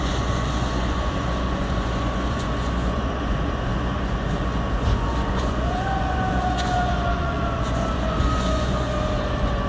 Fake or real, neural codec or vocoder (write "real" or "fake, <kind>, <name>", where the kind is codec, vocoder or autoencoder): fake, vocoder, Vocos